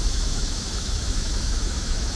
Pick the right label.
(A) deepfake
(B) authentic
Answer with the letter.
A